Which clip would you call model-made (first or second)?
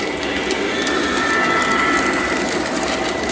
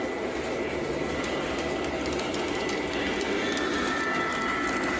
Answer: first